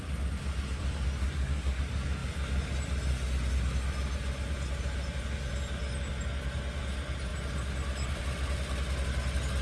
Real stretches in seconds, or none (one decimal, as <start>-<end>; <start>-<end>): 0.0-1.2; 1.8-9.6